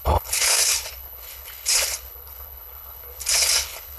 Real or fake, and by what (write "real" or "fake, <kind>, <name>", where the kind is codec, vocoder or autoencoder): fake, codec, HILCodec